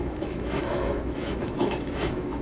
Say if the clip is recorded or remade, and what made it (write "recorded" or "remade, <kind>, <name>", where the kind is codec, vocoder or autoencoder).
remade, autoencoder, DAC-VAE